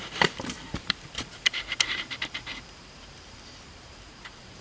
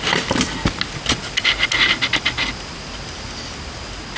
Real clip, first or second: second